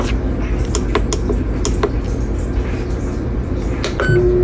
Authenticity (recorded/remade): recorded